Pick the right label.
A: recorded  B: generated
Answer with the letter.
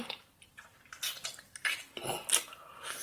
A